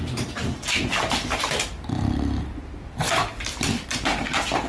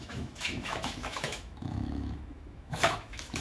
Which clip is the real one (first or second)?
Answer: first